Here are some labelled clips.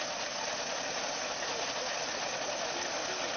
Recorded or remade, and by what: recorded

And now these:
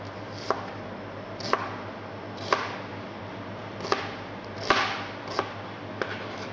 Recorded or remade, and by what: recorded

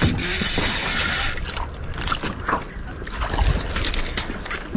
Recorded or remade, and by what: recorded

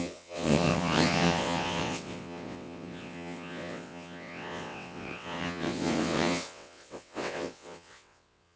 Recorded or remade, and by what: remade, vocoder, WaveNeXt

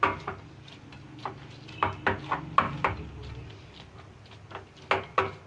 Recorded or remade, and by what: recorded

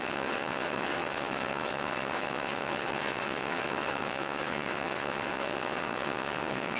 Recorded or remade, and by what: remade, vocoder, WaveNeXt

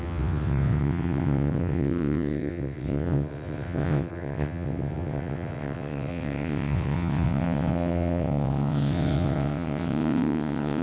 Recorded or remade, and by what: remade, vocoder, WaveNeXt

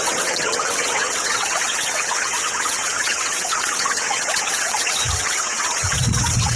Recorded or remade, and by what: remade, vocoder, WaveNeXt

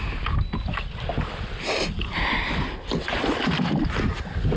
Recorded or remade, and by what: recorded